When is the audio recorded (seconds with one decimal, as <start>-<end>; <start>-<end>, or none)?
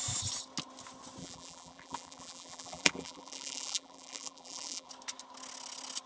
0.0-1.2; 4.9-6.1